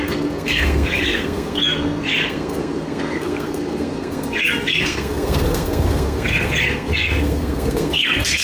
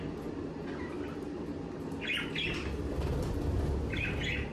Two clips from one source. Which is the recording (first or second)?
second